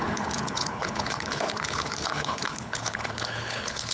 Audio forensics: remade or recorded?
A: remade